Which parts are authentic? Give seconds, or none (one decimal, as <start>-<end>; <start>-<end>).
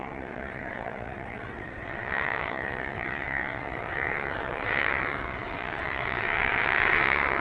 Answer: none